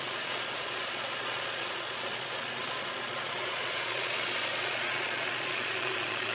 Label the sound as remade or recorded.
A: remade